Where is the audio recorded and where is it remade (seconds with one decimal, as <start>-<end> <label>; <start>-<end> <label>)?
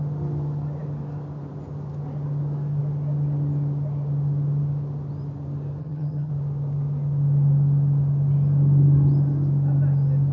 0.0-5.8 recorded; 5.8-6.3 remade; 6.3-10.3 recorded